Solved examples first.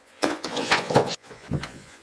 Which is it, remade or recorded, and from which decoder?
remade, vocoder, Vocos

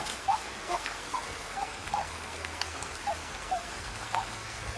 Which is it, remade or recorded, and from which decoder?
remade, codec, SNAC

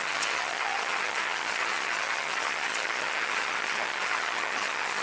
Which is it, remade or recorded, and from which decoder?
remade, vocoder, HiFi-GAN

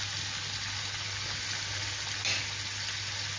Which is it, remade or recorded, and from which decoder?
recorded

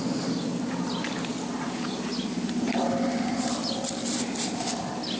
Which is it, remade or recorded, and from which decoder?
recorded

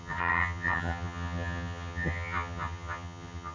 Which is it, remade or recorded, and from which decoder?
remade, vocoder, HiFi-GAN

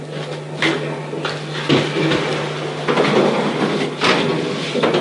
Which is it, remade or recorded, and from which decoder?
recorded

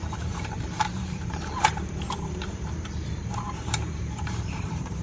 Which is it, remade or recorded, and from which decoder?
remade, vocoder, BigVGAN v2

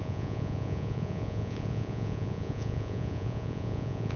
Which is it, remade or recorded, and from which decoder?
remade, vocoder, Vocos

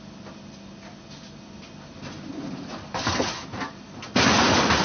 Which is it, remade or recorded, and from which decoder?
recorded